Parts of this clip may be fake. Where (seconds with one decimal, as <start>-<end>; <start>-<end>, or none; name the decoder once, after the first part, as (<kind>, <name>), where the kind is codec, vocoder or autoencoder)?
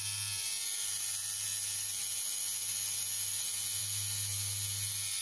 none